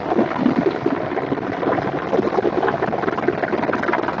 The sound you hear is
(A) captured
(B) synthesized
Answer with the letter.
A